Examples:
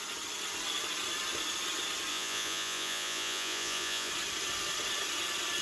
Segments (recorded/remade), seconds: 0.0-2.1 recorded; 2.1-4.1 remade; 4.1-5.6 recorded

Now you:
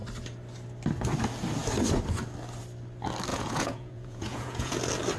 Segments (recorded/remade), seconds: 0.0-3.3 recorded; 3.3-4.8 remade; 4.8-5.2 recorded